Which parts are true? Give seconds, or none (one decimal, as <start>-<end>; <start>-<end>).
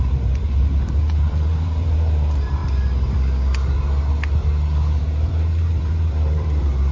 2.6-5.0